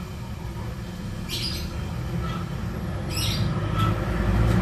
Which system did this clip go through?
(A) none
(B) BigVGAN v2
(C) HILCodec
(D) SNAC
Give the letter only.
A